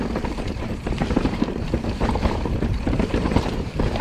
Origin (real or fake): fake